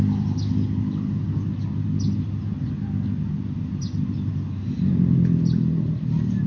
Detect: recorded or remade recorded